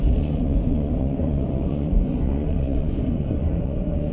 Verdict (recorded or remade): remade